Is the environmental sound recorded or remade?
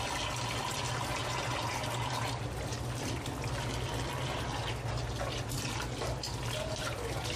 recorded